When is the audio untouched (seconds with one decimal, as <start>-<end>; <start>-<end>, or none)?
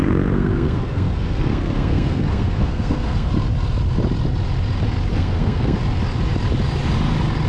3.3-5.1; 5.8-7.5